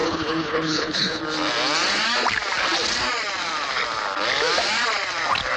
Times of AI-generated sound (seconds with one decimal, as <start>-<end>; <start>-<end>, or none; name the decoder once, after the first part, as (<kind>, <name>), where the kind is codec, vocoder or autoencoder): 0.0-1.2 (codec, HILCodec)